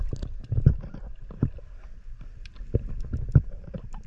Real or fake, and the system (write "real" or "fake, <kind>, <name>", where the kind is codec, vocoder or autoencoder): real